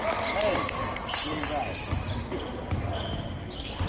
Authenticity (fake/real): real